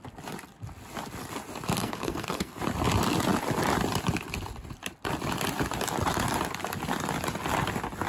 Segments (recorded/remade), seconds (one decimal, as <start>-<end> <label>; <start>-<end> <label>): 0.0-1.8 recorded; 1.8-2.6 remade; 2.6-8.1 recorded